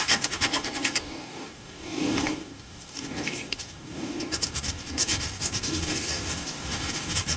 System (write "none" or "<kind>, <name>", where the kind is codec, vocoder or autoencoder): codec, DAC